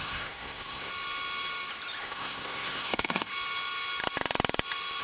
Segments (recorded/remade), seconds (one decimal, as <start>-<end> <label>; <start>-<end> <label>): 0.0-0.9 remade; 0.9-2.0 recorded; 2.0-3.3 remade; 3.3-5.0 recorded